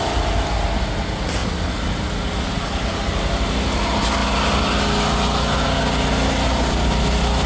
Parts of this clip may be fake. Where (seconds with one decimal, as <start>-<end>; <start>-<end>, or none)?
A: none